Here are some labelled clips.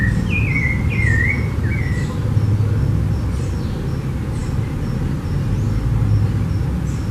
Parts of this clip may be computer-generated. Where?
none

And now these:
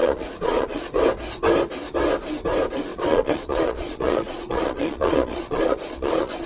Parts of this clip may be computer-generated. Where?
0.0-1.0 (vocoder, Vocos); 2.9-6.5